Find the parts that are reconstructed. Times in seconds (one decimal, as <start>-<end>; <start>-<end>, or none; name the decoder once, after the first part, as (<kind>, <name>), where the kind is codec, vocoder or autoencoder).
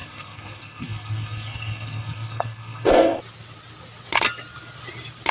0.0-3.2 (codec, SNAC)